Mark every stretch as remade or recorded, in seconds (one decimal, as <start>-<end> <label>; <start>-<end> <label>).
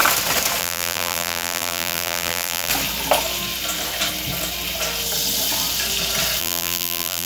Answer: 0.0-0.6 recorded; 0.6-2.7 remade; 2.7-6.4 recorded; 6.4-7.3 remade